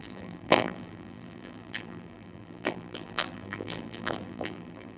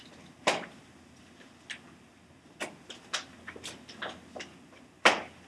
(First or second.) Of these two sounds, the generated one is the first